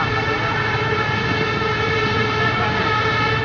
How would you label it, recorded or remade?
recorded